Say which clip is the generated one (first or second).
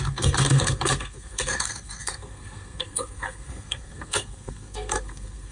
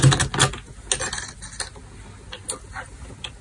first